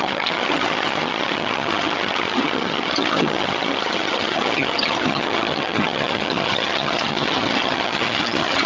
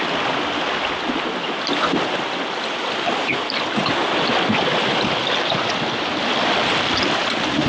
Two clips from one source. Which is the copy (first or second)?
first